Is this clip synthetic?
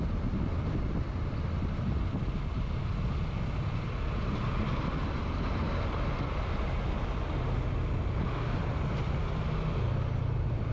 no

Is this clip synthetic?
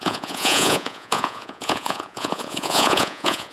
yes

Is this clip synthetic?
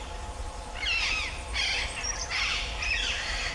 no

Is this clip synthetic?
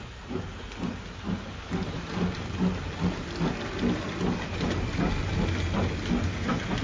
no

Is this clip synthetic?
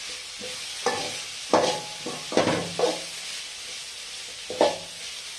no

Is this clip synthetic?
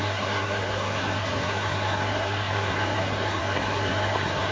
yes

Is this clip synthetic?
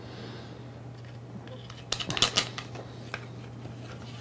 no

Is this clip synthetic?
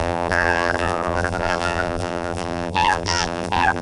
yes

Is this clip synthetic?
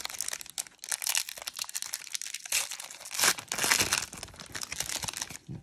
no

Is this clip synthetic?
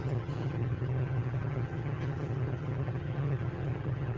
yes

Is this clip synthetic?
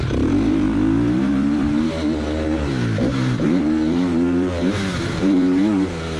yes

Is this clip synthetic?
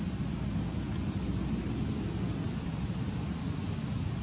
no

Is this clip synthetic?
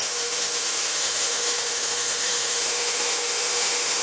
yes